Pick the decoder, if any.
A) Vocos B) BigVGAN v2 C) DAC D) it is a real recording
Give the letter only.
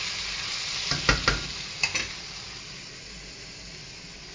D